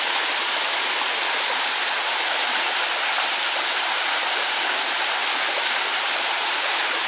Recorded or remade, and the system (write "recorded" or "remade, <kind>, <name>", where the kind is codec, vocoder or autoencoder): recorded